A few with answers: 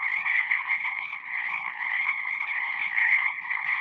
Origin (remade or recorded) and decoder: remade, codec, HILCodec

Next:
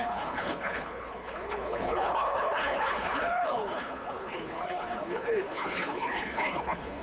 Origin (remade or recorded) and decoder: remade, codec, HILCodec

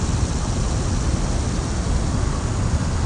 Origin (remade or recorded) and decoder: recorded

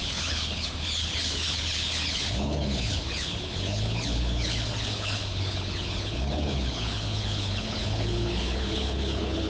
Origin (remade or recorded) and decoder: remade, codec, HILCodec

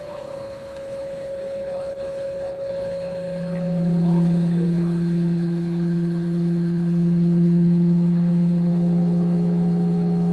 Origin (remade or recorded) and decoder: remade, codec, HILCodec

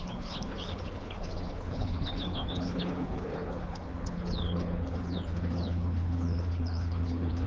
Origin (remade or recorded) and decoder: remade, codec, HILCodec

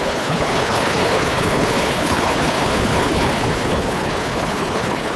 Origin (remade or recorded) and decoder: remade, codec, HILCodec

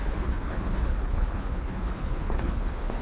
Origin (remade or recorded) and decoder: remade, codec, HILCodec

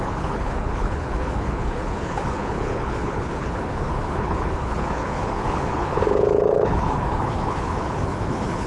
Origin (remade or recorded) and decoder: remade, codec, HILCodec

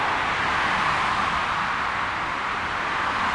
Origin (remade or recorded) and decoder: recorded